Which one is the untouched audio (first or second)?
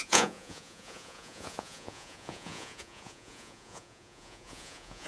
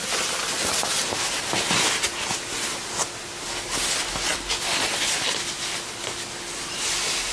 second